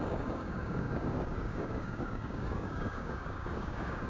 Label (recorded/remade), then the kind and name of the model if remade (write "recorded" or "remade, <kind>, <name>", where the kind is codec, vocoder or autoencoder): remade, codec, DAC